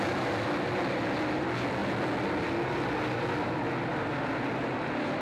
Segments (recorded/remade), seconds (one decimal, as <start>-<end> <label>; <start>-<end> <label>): 0.0-5.2 recorded